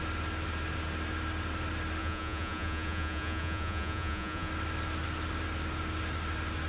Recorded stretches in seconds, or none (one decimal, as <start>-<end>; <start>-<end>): 0.0-2.0; 4.5-6.7